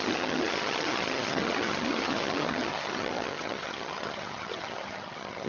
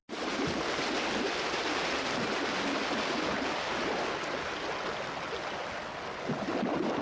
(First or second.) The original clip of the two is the second